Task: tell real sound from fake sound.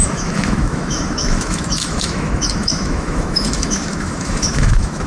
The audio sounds fake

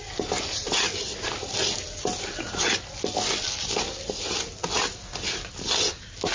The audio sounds real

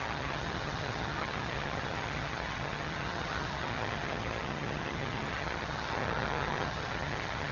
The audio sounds fake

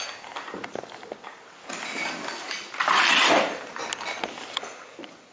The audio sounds real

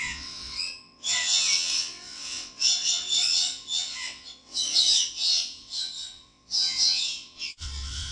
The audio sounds fake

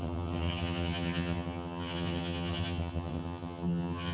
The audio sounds fake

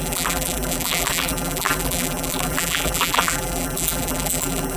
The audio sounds fake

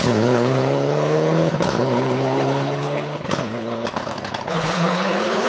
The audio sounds fake